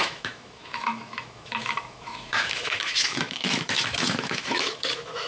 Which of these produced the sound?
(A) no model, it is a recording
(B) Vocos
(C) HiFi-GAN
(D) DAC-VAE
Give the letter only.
D